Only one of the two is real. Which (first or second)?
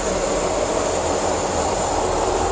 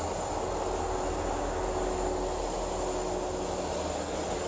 second